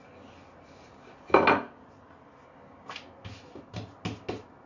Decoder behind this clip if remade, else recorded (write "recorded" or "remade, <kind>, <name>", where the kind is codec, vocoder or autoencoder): recorded